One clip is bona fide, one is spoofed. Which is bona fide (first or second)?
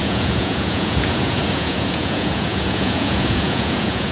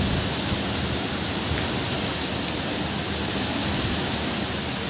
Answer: second